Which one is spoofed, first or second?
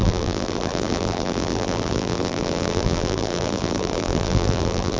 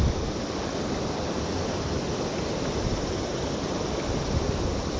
first